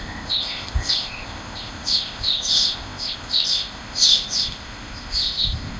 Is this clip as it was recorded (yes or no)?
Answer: no